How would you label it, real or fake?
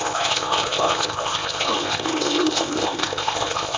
fake